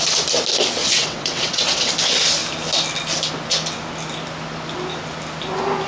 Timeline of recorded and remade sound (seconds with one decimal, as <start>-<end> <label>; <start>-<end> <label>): 0.0-0.8 recorded; 0.8-1.9 remade; 1.9-5.9 recorded